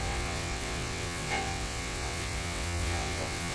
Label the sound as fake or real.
fake